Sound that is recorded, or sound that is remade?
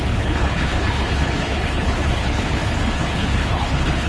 remade